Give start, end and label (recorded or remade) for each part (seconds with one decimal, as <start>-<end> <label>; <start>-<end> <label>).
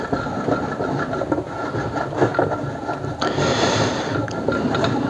0.0-2.3 recorded; 2.3-2.9 remade; 2.9-5.1 recorded